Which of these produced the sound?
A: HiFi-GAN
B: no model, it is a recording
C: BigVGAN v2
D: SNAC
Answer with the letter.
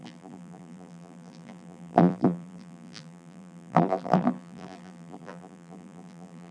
C